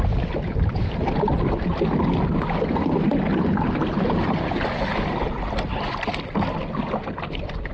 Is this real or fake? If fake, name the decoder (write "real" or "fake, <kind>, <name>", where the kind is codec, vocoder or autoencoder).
real